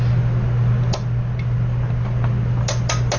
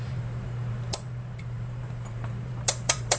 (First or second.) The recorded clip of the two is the first